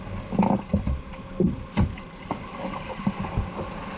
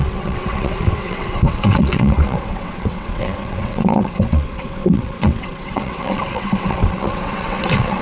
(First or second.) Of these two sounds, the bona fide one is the first